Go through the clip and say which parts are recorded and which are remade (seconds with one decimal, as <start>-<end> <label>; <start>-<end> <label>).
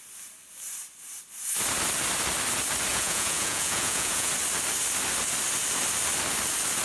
0.0-2.9 recorded; 2.9-4.3 remade; 4.3-6.8 recorded